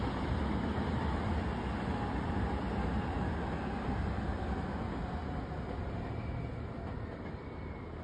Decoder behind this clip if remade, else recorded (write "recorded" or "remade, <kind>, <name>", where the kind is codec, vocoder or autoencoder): recorded